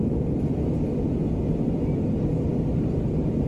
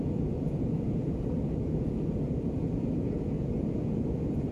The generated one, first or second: second